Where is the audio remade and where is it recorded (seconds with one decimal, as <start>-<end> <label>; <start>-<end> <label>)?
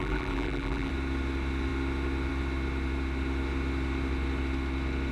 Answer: 0.0-0.9 remade; 0.9-5.1 recorded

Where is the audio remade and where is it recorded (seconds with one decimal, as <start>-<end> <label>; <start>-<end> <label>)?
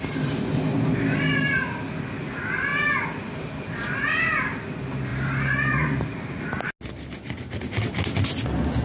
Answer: 0.0-5.1 recorded; 5.1-6.4 remade; 6.4-8.8 recorded